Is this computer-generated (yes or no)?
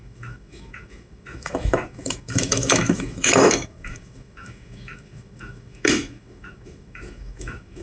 yes